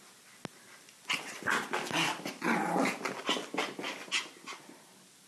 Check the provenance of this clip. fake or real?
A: real